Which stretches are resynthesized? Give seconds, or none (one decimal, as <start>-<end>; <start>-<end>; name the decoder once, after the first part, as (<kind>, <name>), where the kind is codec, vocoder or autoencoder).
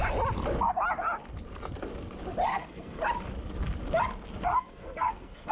2.5-3.0 (codec, SNAC); 4.5-5.5